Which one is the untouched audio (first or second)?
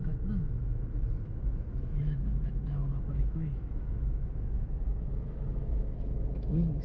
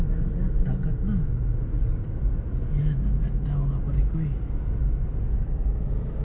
second